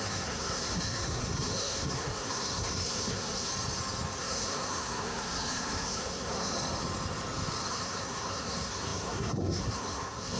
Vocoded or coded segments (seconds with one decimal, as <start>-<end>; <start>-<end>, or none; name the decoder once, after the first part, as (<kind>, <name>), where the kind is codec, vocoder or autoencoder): 0.0-3.5 (codec, SNAC); 4.2-6.5; 7.7-10.4